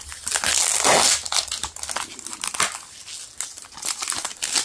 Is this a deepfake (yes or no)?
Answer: no